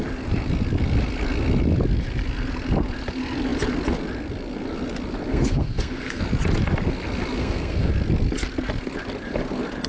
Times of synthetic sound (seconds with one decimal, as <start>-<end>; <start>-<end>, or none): 5.3-6.2; 7.4-7.9